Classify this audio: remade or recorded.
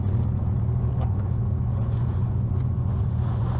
remade